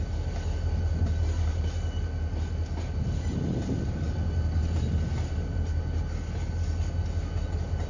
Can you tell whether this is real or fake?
real